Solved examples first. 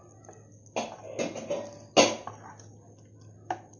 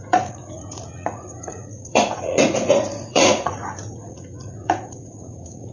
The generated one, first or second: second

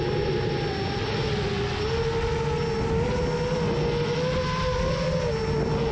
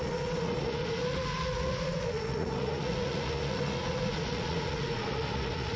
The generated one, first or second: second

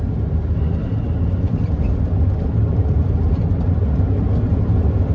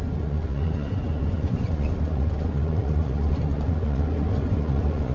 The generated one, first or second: second